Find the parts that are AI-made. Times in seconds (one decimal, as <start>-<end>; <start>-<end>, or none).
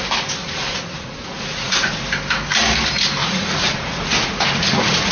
0.4-2.0; 3.2-5.1